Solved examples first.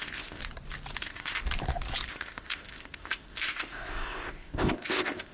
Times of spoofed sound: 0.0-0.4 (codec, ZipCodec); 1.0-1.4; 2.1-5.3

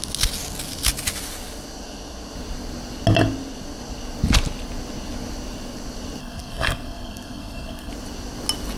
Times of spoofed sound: 6.2-7.9 (codec, SNAC)

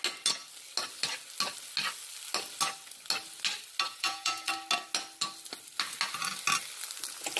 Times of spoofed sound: 3.9-4.5 (vocoder, Vocos)

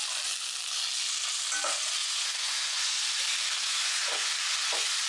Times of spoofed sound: 2.0-3.0 (vocoder, Vocos); 3.6-4.3

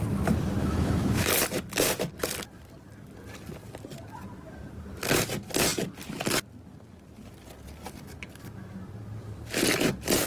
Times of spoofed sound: 0.6-1.3 (autoencoder, DAC-VAE)

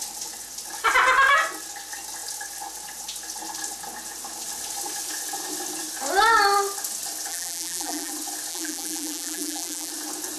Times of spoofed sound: 7.3-8.1 (vocoder, BigVGAN v2); 8.5-9.9

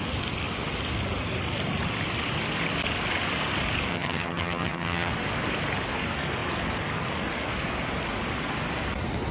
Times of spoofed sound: 3.9-5.1 (vocoder, HiFi-GAN)

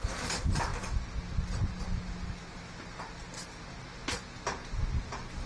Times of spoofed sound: none